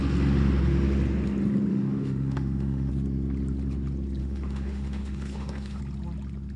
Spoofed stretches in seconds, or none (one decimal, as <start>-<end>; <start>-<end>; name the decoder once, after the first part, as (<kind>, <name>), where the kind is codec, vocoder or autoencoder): 1.7-2.9 (autoencoder, DAC-VAE); 4.2-5.8